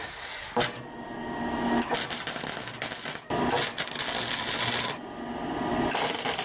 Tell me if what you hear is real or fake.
real